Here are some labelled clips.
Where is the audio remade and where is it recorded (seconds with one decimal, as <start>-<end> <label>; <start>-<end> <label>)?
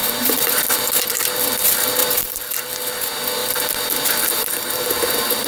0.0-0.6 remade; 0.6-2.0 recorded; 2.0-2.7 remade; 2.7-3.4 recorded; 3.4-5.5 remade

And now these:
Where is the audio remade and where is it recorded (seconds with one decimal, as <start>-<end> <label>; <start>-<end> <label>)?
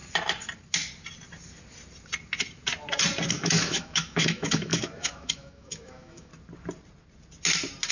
0.0-3.3 recorded; 3.3-6.3 remade; 6.3-7.9 recorded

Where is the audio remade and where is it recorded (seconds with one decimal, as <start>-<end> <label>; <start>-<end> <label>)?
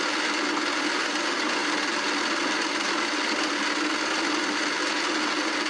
0.0-5.7 recorded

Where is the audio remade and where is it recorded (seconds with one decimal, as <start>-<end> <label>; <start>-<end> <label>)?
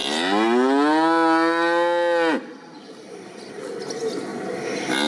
0.0-5.1 recorded